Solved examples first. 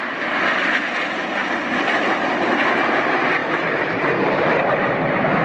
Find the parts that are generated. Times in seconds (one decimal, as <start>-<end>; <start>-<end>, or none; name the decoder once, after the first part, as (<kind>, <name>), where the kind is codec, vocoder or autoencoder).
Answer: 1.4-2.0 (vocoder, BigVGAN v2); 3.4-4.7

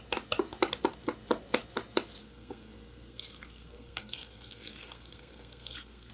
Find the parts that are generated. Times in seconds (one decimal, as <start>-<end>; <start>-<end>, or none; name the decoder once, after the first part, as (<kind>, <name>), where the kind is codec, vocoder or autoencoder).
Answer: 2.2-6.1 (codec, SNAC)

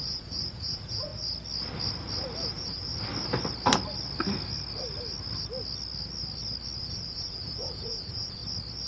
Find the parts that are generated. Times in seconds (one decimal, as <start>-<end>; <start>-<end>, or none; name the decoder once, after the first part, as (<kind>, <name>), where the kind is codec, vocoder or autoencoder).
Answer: 0.0-1.1 (vocoder, Vocos); 2.5-2.9; 6.8-8.4

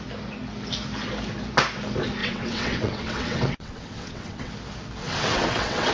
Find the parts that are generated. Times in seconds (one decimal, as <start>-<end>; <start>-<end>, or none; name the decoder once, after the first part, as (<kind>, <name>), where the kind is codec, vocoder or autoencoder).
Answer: 2.2-4.5 (vocoder, WaveNeXt); 5.0-5.9

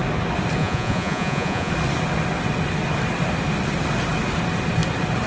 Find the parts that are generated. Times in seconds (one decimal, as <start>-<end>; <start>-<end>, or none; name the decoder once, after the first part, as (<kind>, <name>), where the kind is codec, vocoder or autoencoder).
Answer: 0.6-1.7 (vocoder, Vocos)

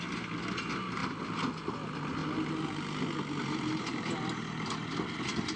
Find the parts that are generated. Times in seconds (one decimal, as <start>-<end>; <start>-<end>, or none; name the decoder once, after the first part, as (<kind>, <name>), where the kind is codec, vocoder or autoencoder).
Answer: none